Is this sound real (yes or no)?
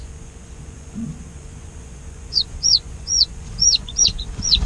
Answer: no